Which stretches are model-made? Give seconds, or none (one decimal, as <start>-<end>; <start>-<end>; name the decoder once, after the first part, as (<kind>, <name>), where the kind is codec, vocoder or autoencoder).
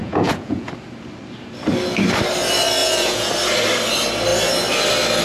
0.0-0.7 (vocoder, Vocos); 2.8-3.3